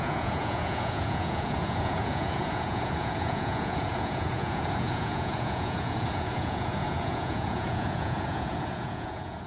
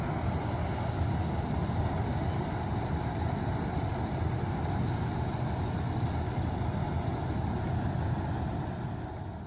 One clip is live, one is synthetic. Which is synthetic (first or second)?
first